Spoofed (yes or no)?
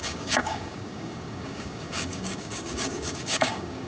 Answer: yes